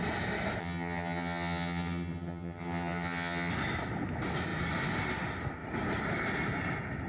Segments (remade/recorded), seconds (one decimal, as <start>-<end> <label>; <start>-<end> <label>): 0.0-0.6 recorded; 0.6-3.5 remade; 3.5-7.1 recorded